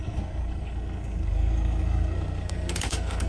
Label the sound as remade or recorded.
remade